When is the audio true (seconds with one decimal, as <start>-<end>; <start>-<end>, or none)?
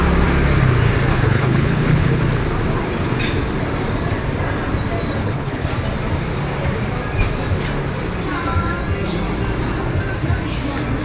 0.0-1.1; 2.2-5.2; 5.7-11.0